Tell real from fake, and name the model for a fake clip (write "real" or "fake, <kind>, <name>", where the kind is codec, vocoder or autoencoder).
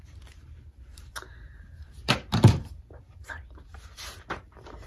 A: fake, vocoder, BigVGAN v2